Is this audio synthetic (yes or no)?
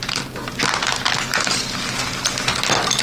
no